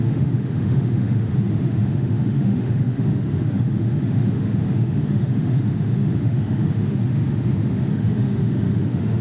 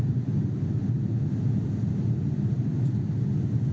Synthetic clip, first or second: first